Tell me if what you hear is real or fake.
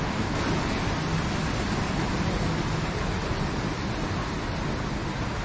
real